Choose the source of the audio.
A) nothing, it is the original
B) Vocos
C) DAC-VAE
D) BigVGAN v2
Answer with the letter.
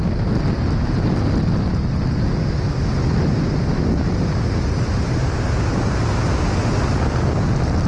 A